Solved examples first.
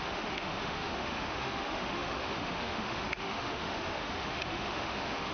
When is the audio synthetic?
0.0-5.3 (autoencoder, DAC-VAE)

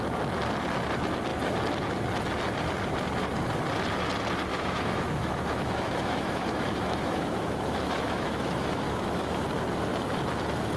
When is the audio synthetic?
4.5-9.4 (autoencoder, DAC-VAE)

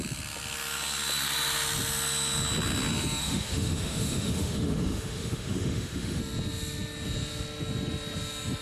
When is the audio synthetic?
3.2-6.2 (autoencoder, DAC-VAE)

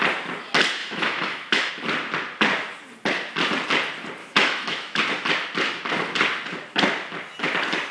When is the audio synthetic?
0.8-1.7 (autoencoder, DAC-VAE); 4.2-5.0

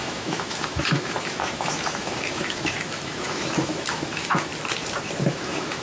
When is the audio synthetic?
0.0-4.5 (autoencoder, DAC-VAE); 5.3-5.8

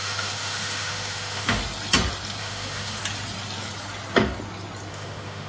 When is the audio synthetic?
0.0-1.6 (autoencoder, DAC-VAE); 2.4-3.0; 4.9-5.5

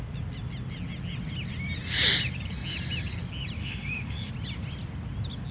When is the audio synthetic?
3.6-4.3 (autoencoder, DAC-VAE)

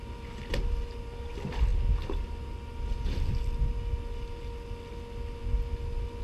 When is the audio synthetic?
none